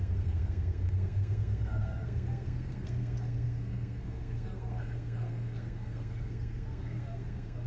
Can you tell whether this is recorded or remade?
remade